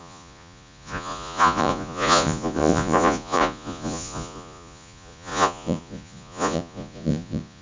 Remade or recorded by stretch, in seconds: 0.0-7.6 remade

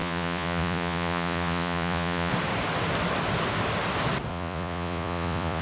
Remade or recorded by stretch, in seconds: 0.0-2.3 remade; 2.3-4.3 recorded; 4.3-5.6 remade

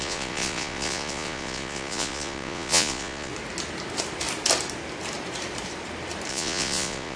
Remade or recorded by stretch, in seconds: 0.0-3.3 remade; 3.3-6.3 recorded; 6.3-7.2 remade

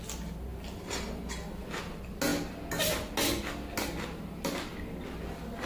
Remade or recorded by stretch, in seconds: 0.0-5.7 recorded

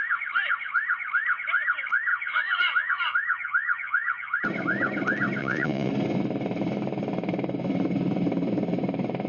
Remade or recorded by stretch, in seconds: 0.0-2.1 recorded; 2.1-4.4 remade; 4.4-5.4 recorded; 5.4-5.9 remade; 5.9-9.3 recorded